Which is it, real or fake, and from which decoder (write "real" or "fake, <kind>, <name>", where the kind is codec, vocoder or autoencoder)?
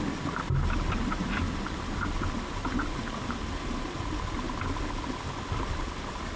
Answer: real